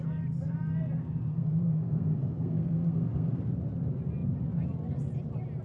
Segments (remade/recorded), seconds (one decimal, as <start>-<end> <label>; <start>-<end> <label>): 0.0-1.3 recorded; 1.3-3.4 remade; 3.4-5.6 recorded